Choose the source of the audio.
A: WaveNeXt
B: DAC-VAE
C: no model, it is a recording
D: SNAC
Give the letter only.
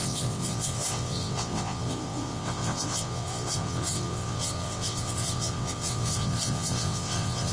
A